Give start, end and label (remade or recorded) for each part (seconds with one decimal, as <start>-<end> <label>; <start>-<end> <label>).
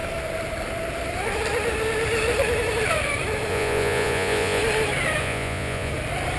0.0-3.5 recorded; 3.5-4.6 remade; 4.6-5.2 recorded; 5.2-5.9 remade; 5.9-6.4 recorded